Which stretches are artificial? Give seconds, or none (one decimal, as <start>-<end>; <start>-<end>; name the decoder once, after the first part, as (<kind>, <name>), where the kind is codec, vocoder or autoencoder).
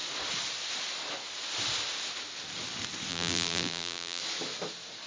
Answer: 3.1-4.2 (vocoder, BigVGAN v2)